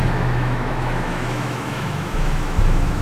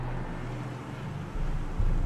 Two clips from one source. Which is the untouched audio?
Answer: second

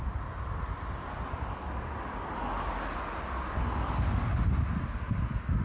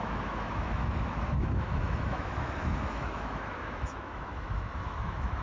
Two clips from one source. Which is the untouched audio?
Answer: first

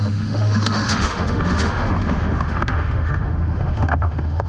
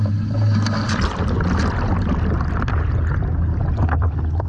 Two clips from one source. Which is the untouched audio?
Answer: second